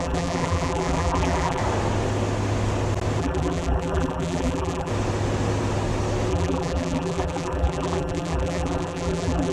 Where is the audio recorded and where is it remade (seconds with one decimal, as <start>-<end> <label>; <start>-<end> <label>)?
0.0-1.6 remade; 1.6-3.2 recorded; 3.2-4.9 remade; 4.9-6.3 recorded; 6.3-9.5 remade

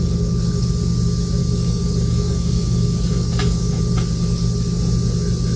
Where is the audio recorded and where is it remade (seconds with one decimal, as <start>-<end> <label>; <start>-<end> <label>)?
0.0-1.4 recorded; 1.4-3.8 remade; 3.8-5.6 recorded

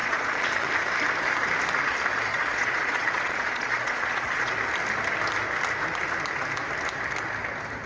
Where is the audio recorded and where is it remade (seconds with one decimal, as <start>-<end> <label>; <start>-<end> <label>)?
0.0-0.7 remade; 0.7-2.3 recorded; 2.3-4.5 remade; 4.5-7.9 recorded